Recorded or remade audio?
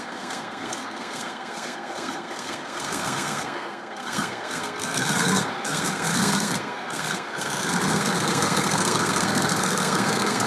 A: remade